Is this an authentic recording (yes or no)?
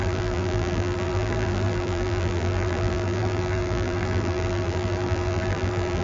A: no